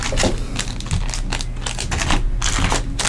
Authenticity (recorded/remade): recorded